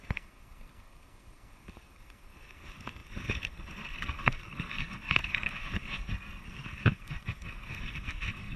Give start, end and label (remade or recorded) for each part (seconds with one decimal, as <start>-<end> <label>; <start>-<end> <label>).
0.0-8.6 remade